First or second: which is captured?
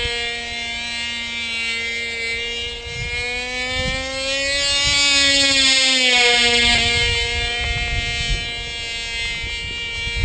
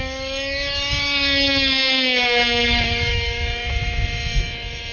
first